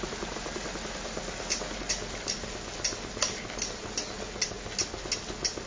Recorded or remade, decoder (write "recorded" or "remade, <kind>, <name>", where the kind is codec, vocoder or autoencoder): recorded